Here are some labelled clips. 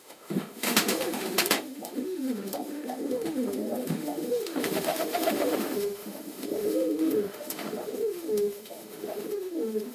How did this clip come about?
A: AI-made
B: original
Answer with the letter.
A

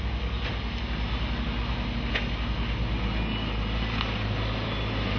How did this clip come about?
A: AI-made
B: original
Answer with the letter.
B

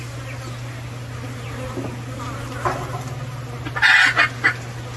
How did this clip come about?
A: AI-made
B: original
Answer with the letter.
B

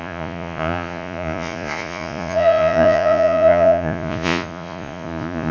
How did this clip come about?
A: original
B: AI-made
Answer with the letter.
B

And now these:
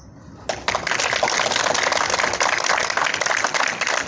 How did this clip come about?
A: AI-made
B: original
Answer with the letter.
B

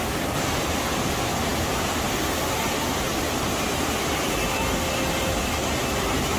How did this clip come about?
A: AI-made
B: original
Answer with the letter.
B